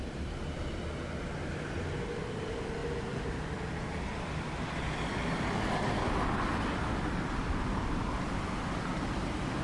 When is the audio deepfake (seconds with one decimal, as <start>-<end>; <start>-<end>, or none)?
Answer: none